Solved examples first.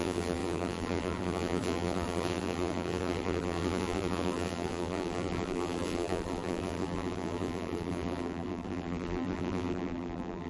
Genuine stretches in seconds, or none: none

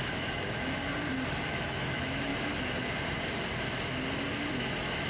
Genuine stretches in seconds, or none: 0.8-1.3; 2.3-4.5

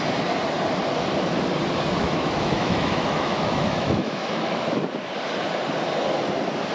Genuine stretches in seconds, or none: 0.0-2.0; 4.8-6.7

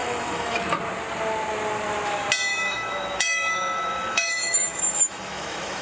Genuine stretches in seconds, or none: 0.6-2.5

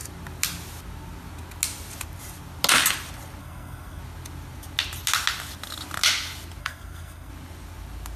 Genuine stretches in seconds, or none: 0.0-3.4; 4.0-6.6; 7.3-8.2

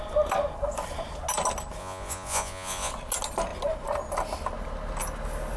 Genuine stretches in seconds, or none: 0.0-1.8; 2.9-5.6

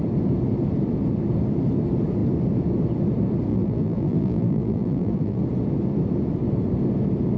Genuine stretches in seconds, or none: 0.0-3.5; 5.4-7.4

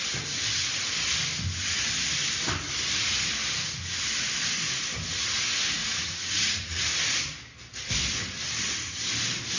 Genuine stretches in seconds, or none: 0.0-5.8; 6.8-9.6